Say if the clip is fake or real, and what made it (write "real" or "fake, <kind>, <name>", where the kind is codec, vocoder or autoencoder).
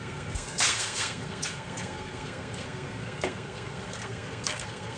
fake, codec, SNAC